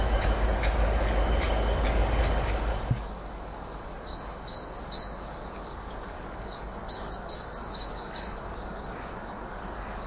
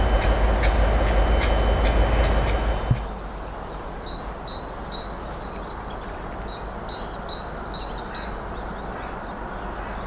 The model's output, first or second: first